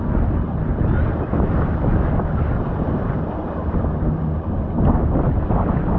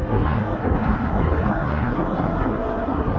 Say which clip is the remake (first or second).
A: second